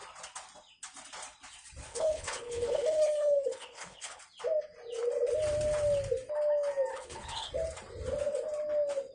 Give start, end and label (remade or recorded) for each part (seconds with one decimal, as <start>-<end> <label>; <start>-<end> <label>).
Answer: 0.0-1.9 recorded; 1.9-4.2 remade; 4.2-6.9 recorded; 6.9-7.5 remade; 7.5-9.1 recorded